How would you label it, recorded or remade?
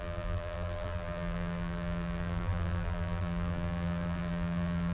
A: remade